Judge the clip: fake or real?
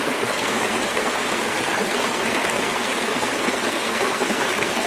fake